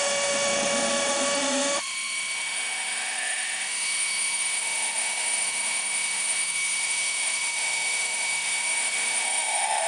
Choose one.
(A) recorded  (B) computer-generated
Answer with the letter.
B